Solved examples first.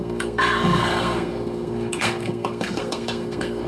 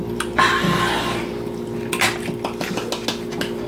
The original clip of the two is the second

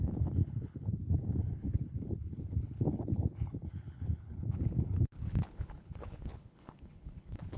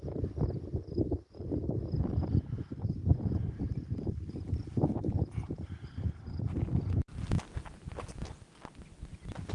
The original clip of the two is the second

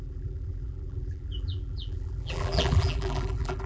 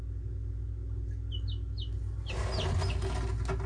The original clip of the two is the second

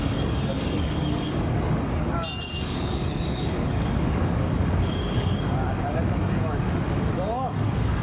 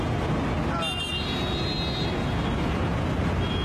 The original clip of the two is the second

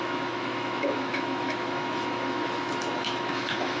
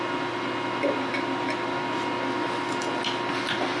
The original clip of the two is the second